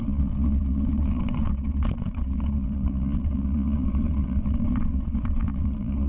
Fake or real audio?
fake